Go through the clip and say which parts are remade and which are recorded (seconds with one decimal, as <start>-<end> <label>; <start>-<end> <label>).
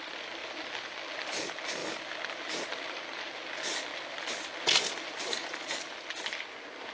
0.0-6.9 recorded